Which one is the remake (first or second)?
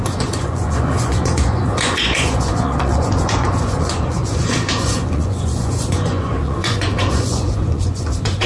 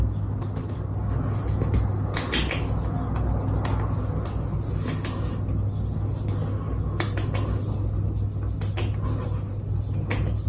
first